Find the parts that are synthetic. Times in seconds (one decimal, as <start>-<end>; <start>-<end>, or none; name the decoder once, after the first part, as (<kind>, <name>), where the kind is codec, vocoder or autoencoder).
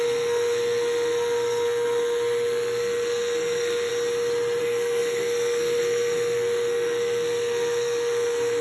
0.0-3.9 (codec, SNAC); 4.6-8.6